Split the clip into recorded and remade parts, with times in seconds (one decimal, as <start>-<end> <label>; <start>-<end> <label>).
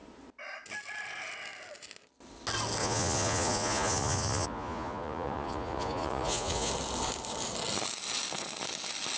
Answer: 0.0-2.8 recorded; 2.8-6.7 remade; 6.7-9.2 recorded